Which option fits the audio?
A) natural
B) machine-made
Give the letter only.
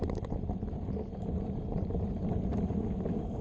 A